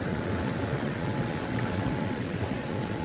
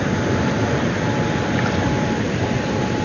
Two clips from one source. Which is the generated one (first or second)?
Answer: first